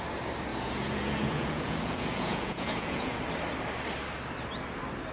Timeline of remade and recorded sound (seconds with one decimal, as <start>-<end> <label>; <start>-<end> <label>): 0.0-0.5 recorded; 0.5-3.2 remade; 3.2-5.1 recorded